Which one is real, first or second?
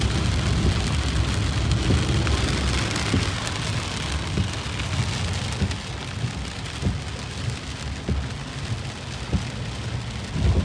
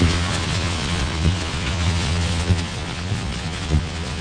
first